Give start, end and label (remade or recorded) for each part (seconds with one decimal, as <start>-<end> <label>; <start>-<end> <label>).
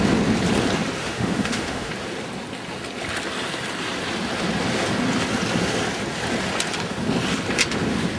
0.0-1.0 recorded; 1.0-1.9 remade; 1.9-8.2 recorded